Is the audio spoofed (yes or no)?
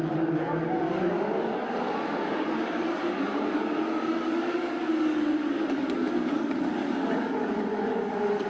yes